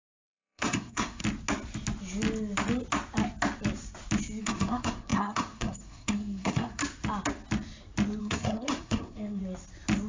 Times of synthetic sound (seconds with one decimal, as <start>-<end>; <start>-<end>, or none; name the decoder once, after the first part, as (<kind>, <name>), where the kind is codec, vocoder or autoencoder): 0.0-1.2 (codec, SNAC); 4.4-6.8; 8.2-9.4